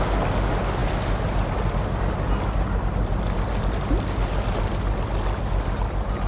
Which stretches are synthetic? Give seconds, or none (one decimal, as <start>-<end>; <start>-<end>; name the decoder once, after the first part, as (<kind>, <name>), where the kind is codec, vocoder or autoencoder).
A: none